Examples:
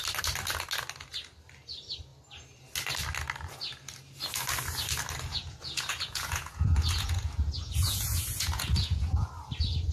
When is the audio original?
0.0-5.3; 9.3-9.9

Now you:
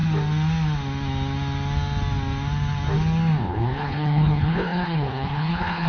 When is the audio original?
0.0-3.5

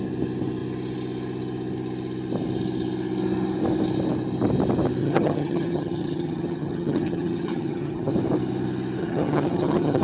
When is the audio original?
0.0-5.0; 8.1-9.0

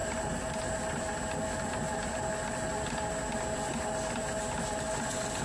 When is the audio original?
0.0-5.4

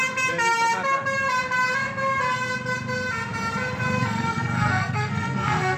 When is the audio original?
0.0-4.0

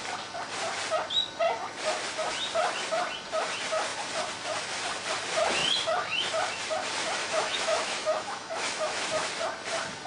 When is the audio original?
0.0-5.6; 6.3-7.2; 9.3-10.1